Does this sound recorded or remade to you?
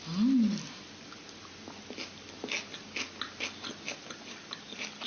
recorded